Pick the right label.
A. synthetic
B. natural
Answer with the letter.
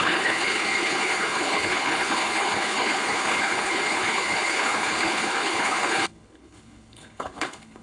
A